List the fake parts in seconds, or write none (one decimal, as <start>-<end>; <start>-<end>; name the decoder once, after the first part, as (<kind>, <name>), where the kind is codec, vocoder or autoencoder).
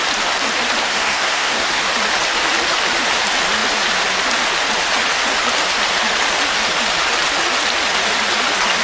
0.8-1.8 (codec, SNAC)